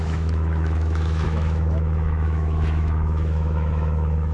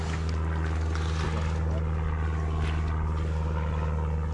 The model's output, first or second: first